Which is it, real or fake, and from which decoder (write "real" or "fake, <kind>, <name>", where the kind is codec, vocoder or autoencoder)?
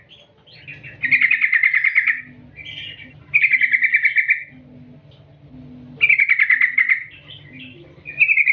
real